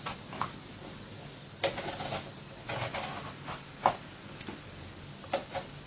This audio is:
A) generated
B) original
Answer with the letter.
B